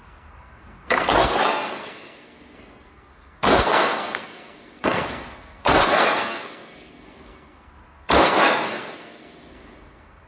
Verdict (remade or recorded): remade